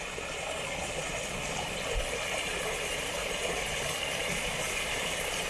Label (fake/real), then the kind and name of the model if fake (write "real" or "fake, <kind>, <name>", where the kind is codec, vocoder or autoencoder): real